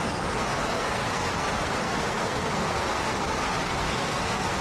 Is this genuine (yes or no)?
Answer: no